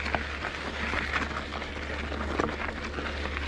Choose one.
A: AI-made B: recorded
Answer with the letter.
B